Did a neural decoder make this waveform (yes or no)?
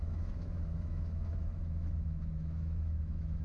yes